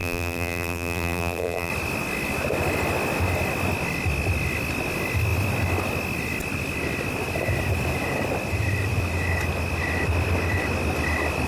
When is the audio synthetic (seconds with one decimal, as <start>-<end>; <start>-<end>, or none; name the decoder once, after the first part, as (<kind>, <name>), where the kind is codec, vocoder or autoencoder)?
0.0-1.7 (vocoder, BigVGAN v2)